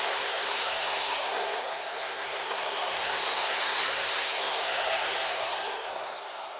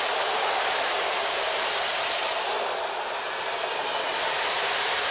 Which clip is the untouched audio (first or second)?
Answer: second